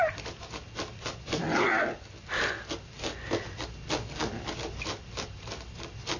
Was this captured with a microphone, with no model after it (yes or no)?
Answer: yes